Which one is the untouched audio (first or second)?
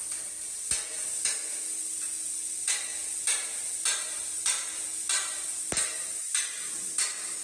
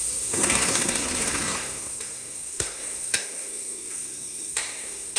first